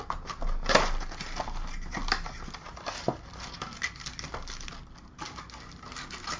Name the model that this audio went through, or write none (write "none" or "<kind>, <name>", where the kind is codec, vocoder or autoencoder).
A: none